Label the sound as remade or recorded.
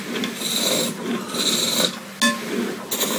recorded